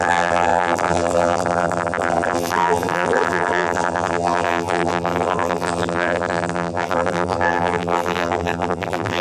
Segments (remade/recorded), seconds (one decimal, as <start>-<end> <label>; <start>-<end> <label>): 0.0-9.2 remade